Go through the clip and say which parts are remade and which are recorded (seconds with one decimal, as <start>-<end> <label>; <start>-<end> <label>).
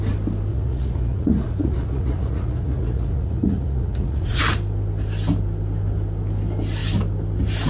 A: 0.0-0.5 recorded; 0.5-4.4 remade; 4.4-7.7 recorded